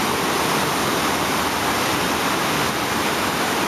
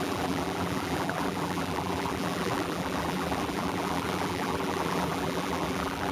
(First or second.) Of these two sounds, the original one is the first